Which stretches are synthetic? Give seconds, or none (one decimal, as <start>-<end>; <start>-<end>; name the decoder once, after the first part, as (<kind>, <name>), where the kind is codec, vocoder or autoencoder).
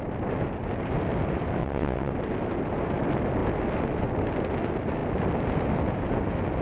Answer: 1.6-2.1 (vocoder, WaveNeXt)